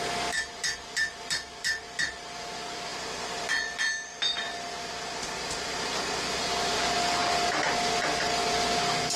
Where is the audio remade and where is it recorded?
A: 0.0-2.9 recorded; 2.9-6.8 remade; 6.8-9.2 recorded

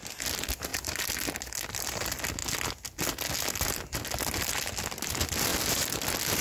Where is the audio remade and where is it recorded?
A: 0.0-6.4 recorded

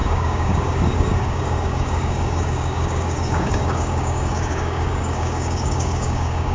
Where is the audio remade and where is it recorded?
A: 0.0-6.5 remade

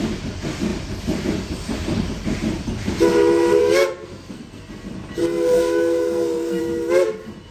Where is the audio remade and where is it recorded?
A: 0.0-3.6 recorded; 3.6-4.7 remade; 4.7-5.2 recorded; 5.2-6.6 remade; 6.6-7.5 recorded